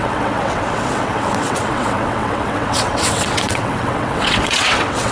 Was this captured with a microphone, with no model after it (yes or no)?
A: no